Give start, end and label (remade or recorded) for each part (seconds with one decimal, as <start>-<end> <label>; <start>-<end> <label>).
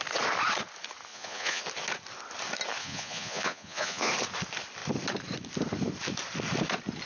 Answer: 0.0-1.1 recorded; 1.1-1.6 remade; 1.6-2.8 recorded; 2.8-4.1 remade; 4.1-7.1 recorded